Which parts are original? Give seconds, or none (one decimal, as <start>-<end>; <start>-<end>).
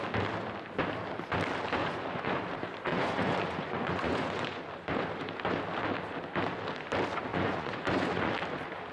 0.0-1.8; 2.4-2.9; 4.6-7.3; 8.3-8.9